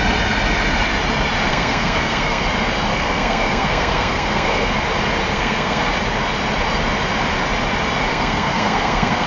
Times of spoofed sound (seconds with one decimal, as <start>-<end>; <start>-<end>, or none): 1.5-2.4; 2.9-4.7; 5.3-5.9; 8.1-9.3